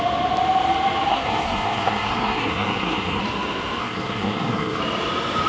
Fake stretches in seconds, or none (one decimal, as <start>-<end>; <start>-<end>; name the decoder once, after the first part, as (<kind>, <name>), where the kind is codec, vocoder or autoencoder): 1.1-3.2 (codec, SNAC); 3.8-4.8